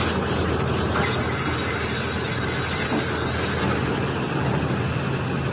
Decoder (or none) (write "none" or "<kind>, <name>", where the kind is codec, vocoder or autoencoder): none